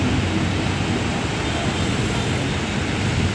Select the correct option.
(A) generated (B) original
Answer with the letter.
B